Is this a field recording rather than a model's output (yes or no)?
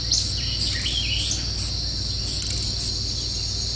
yes